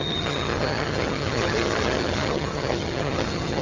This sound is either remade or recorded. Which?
remade